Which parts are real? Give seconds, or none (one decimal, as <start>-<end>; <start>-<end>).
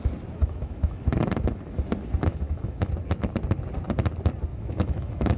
0.0-0.4; 1.1-2.3; 2.9-4.5